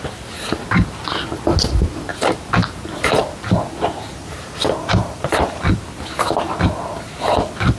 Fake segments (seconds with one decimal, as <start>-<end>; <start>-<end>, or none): 4.1-5.6